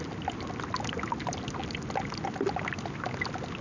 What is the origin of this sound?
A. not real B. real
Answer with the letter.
B